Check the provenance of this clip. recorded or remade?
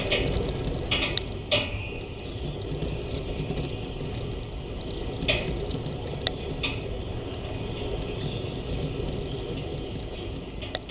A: recorded